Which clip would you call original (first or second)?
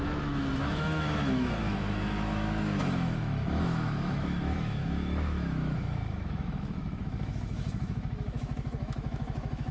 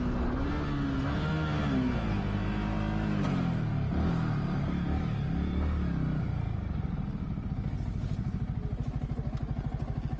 second